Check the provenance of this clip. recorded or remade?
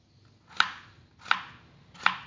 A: recorded